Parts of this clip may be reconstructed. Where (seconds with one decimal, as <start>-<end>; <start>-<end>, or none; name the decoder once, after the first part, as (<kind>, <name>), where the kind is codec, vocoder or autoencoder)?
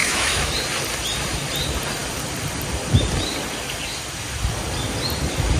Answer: 0.0-0.5 (autoencoder, DAC-VAE)